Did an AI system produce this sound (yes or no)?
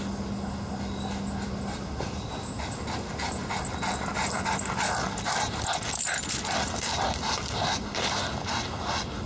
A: no